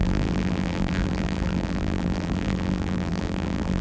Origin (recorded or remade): remade